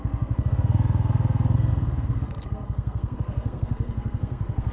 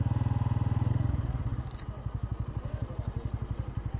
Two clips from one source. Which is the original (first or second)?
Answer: second